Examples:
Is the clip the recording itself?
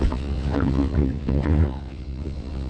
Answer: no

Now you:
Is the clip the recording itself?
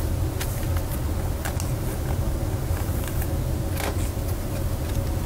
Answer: yes